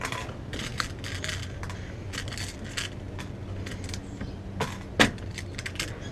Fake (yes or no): no